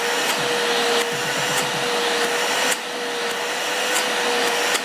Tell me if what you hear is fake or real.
real